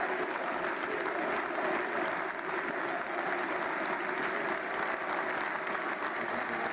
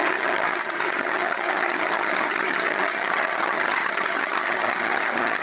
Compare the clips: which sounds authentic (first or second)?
first